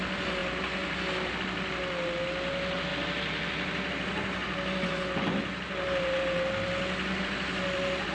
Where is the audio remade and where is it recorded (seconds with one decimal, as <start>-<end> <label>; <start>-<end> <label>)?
0.0-8.1 recorded